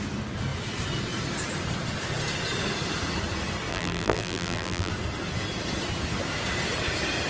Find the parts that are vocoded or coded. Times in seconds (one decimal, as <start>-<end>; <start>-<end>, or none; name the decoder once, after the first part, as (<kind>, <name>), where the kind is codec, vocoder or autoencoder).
3.7-4.9 (vocoder, BigVGAN v2)

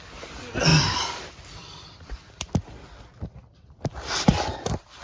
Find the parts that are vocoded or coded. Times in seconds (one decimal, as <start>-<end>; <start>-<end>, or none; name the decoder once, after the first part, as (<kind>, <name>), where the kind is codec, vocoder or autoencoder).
0.7-3.7 (vocoder, BigVGAN v2); 4.3-5.0

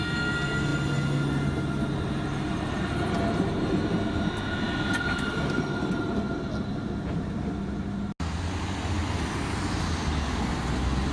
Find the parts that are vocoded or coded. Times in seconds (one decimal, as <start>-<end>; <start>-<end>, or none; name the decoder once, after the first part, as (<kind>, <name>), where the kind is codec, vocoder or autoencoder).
none

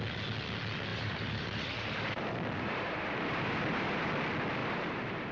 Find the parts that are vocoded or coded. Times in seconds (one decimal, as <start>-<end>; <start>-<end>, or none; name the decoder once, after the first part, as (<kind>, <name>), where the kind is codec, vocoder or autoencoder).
0.9-4.1 (vocoder, BigVGAN v2); 4.6-5.3

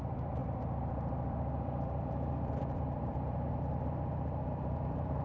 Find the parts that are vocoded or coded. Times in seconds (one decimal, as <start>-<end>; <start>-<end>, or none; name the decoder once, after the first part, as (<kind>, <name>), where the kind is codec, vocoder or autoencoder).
0.0-5.2 (vocoder, BigVGAN v2)

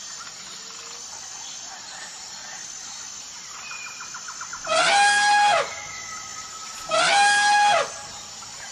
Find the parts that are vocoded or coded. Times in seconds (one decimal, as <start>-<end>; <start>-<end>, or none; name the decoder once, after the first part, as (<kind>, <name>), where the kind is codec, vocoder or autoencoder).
none

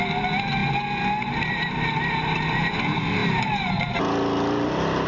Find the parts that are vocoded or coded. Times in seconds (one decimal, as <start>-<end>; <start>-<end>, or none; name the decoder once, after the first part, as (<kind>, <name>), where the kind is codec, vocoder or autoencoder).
3.2-3.8 (vocoder, BigVGAN v2)